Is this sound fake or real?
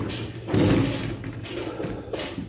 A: real